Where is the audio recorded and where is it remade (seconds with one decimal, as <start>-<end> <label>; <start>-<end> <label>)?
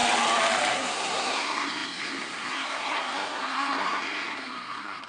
0.0-0.7 recorded; 0.7-5.1 remade